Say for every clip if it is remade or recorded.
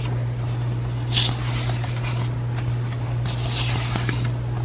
recorded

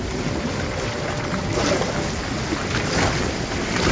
recorded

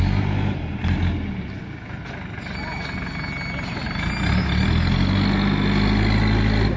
recorded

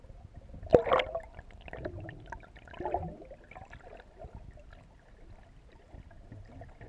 recorded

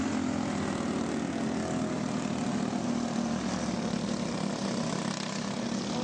recorded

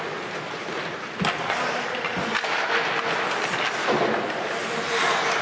recorded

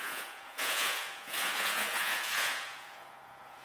remade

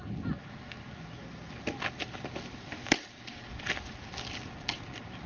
recorded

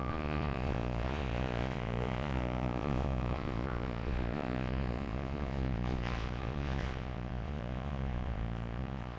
remade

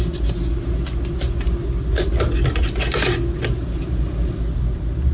recorded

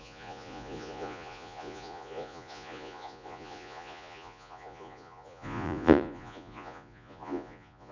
remade